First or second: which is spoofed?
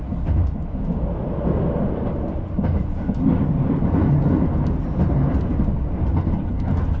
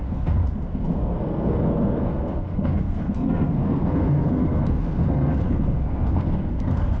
second